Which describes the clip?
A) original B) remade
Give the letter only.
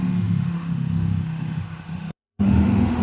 B